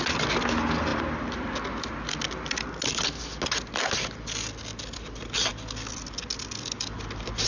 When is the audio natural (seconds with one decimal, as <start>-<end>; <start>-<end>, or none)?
0.0-0.9; 2.1-7.5

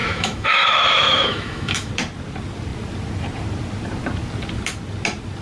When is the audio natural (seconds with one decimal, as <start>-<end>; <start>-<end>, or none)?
1.9-5.4

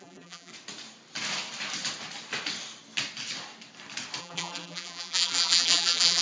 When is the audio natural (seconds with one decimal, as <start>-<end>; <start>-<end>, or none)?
0.5-4.2

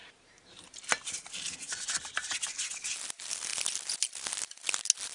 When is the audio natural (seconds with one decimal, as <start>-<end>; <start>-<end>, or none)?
0.0-5.1

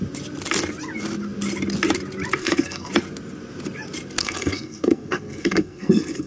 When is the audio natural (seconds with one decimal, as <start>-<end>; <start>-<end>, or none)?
0.0-2.4; 2.9-4.2

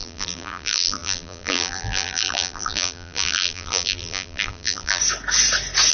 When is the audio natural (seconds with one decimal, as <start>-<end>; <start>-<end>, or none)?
5.0-5.9

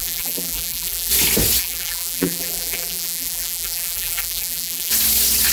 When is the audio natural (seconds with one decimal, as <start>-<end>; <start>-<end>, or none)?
1.1-1.6; 4.9-5.5

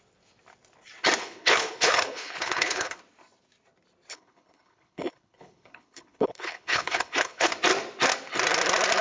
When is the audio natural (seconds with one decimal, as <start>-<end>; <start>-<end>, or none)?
0.0-1.2; 3.0-4.1; 7.5-9.0